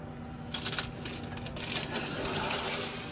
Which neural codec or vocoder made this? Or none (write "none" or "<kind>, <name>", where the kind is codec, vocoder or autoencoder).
none